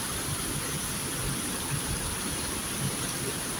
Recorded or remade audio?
recorded